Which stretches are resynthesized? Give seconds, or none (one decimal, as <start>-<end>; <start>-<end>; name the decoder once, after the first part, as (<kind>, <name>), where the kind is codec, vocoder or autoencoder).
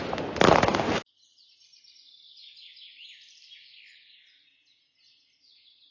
none